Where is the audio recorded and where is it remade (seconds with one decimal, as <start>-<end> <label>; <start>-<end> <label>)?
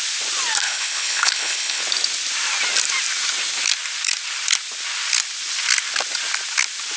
0.0-0.6 recorded; 0.6-1.8 remade; 1.8-7.0 recorded